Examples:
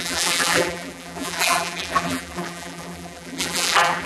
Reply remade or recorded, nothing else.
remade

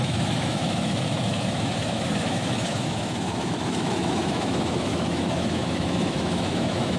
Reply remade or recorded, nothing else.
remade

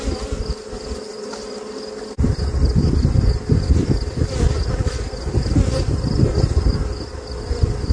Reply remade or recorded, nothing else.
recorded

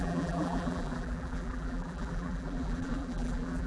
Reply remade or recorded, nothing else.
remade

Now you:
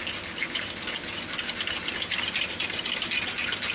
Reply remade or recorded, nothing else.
recorded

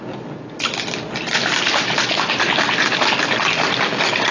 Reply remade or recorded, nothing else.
remade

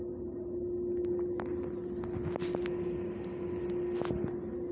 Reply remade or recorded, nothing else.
recorded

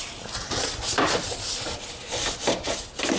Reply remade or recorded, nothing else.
recorded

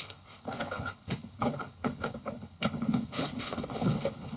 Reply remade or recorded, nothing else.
remade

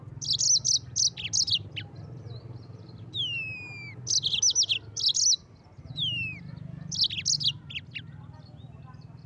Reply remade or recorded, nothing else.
recorded